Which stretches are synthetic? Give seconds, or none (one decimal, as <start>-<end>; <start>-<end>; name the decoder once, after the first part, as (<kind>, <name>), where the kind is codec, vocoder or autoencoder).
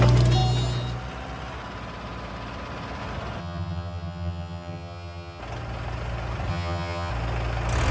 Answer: 3.4-5.4 (vocoder, HiFi-GAN); 6.5-7.1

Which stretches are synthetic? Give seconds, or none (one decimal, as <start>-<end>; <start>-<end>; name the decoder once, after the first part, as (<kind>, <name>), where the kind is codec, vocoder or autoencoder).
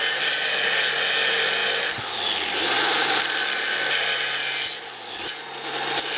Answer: 1.6-5.3 (vocoder, BigVGAN v2)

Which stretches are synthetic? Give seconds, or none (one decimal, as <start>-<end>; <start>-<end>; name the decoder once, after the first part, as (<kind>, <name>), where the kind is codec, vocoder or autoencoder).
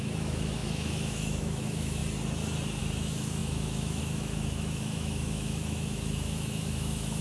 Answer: 0.0-2.0 (autoencoder, DAC-VAE); 2.8-7.2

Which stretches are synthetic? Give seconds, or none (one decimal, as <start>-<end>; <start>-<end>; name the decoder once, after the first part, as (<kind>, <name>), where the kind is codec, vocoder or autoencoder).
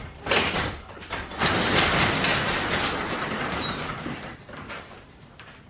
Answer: 0.0-2.3 (vocoder, BigVGAN v2); 4.0-5.7